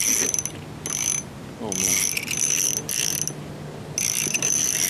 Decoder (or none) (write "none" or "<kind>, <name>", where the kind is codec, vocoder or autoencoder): none